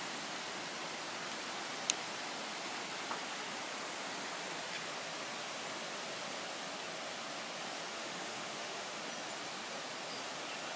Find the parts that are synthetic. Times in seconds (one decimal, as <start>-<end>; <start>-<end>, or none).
7.9-9.0